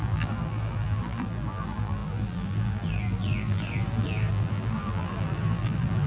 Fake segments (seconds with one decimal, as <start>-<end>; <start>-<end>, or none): 0.0-6.1